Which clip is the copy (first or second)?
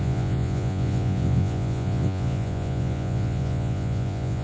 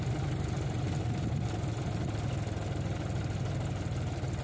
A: first